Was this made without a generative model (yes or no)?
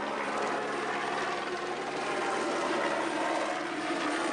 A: no